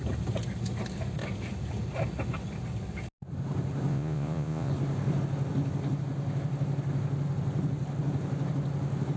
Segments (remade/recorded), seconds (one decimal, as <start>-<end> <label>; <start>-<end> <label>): 0.0-3.9 recorded; 3.9-4.7 remade; 4.7-9.2 recorded